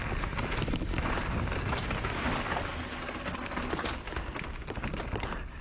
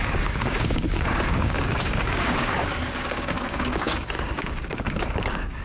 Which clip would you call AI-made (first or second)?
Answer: second